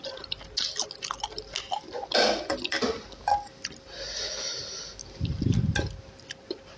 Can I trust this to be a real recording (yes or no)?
yes